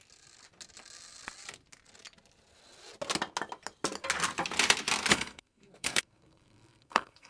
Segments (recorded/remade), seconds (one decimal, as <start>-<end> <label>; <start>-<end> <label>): 0.0-5.1 recorded; 5.1-7.3 remade